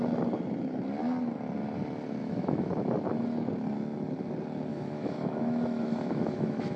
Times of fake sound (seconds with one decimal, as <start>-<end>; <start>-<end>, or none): 2.2-2.7; 4.7-6.8